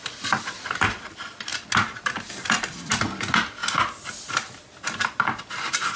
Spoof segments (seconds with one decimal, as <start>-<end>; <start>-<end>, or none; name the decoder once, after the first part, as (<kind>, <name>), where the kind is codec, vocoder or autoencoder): 0.0-1.5 (vocoder, BigVGAN v2); 2.9-3.6; 4.6-6.0